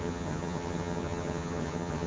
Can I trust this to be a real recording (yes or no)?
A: no